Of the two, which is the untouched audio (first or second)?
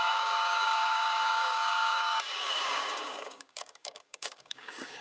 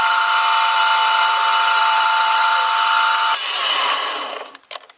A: second